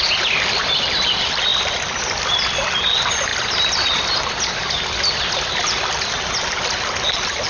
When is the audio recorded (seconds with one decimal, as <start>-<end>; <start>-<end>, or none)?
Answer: none